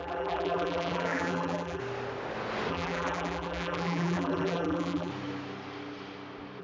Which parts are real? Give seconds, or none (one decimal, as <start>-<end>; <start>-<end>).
1.8-2.7; 5.1-6.6

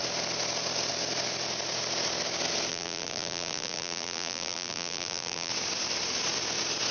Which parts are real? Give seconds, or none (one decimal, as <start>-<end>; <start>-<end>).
0.0-2.7; 5.5-6.9

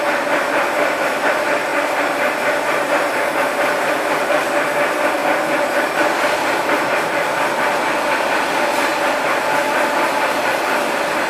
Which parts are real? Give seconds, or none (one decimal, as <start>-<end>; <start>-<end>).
5.2-6.9

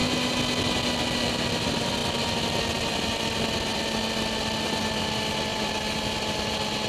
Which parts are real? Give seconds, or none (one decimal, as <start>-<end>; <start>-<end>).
0.0-5.5; 6.1-6.9

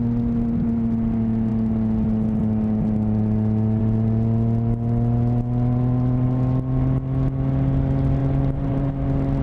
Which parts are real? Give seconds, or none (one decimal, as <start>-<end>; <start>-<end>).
0.0-8.2; 8.9-9.4

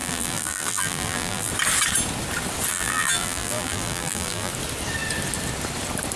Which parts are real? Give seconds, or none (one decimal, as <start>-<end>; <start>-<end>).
1.5-2.7; 4.5-6.2

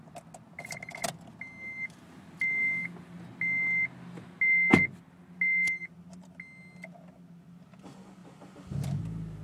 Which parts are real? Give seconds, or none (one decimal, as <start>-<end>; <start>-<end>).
0.0-9.4

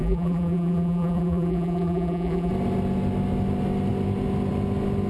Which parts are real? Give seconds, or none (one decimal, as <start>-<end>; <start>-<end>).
2.5-5.1